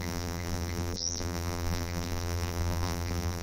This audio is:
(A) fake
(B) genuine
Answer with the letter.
A